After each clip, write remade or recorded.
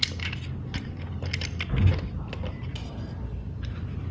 recorded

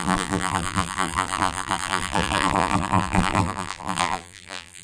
remade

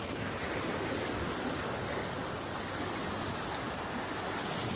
recorded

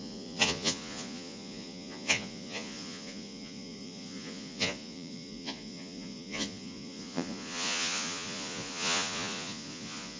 remade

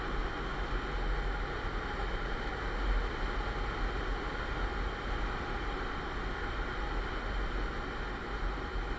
recorded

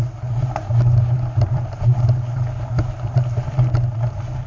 recorded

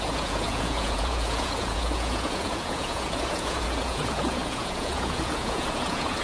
remade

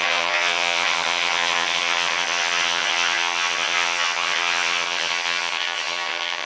remade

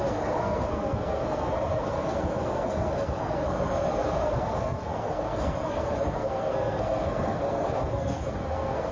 remade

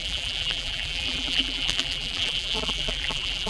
remade